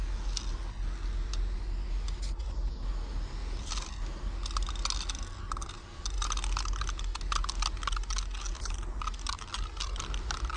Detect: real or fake real